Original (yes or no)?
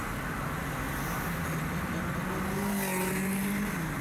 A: yes